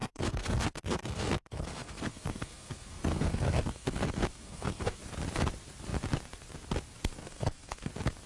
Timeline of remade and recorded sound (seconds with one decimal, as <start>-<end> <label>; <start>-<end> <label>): 0.0-5.0 remade; 5.0-7.2 recorded; 7.2-7.9 remade; 7.9-8.3 recorded